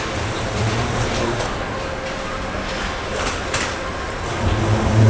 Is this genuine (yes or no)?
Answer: yes